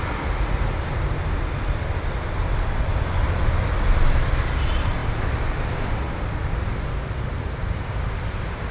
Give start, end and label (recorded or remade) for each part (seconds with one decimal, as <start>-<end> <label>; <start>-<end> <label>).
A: 0.0-8.7 remade